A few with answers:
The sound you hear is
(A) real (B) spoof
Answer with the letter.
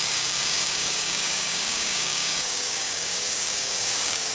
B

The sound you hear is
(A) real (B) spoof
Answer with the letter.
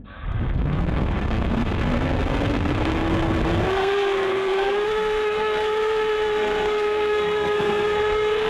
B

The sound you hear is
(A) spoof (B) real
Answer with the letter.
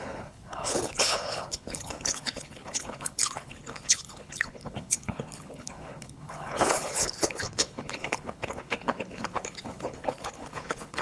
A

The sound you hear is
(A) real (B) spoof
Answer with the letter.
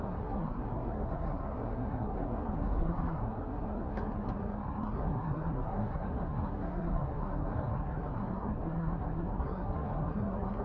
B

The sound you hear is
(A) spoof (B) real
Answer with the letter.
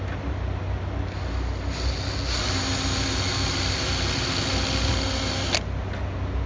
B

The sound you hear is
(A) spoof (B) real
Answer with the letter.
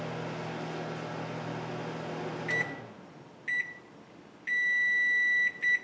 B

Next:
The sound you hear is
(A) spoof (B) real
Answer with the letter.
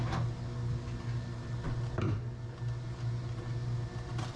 B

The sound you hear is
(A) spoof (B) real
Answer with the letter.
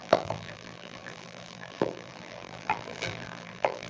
A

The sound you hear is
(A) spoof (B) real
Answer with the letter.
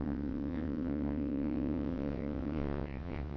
A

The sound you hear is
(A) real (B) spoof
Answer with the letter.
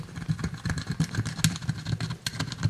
A